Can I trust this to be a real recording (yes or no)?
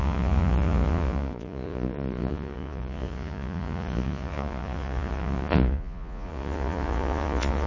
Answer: no